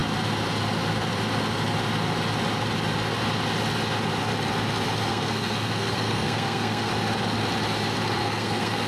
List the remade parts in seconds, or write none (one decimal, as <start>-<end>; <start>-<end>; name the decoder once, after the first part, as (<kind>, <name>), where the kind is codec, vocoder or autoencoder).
5.1-6.9 (codec, SNAC); 8.2-8.9